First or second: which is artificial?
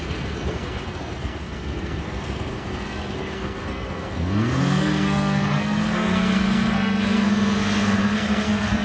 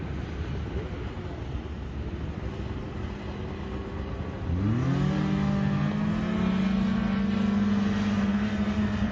first